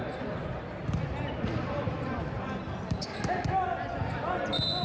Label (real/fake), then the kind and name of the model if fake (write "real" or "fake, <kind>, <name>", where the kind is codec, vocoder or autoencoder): real